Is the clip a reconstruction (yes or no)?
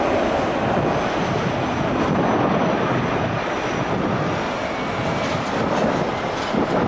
no